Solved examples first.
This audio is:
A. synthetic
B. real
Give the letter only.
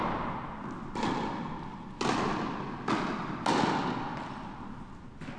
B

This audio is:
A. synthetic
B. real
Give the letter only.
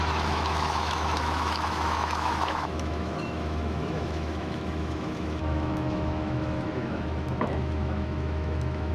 A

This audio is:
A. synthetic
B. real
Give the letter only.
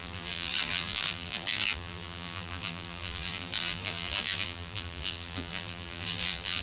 A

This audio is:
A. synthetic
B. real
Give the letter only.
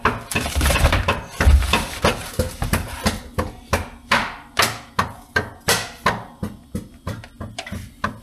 B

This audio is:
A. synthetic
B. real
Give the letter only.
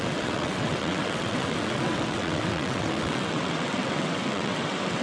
A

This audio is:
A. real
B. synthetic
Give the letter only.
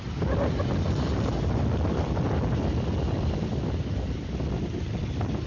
A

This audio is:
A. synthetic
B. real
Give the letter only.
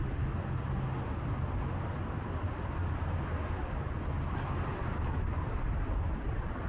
B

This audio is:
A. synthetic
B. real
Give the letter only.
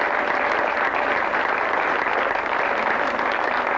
B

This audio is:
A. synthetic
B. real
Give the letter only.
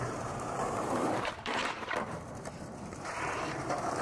A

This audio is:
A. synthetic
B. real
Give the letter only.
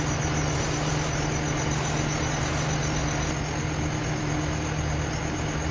B